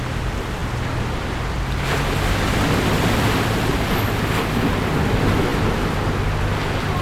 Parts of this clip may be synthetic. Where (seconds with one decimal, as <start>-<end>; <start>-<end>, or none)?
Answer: none

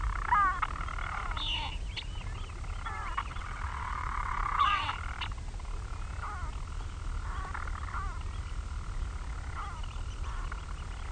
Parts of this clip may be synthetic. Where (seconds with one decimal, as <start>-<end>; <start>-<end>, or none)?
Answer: 3.3-4.9